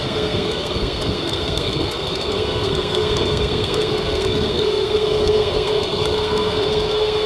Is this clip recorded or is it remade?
remade